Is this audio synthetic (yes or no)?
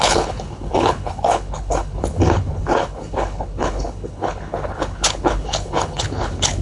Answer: yes